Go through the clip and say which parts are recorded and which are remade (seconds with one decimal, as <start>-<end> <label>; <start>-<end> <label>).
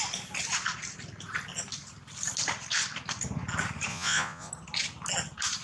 0.0-3.9 recorded; 3.9-4.5 remade; 4.5-5.6 recorded